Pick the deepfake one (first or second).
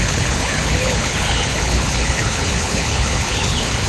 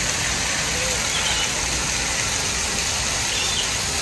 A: first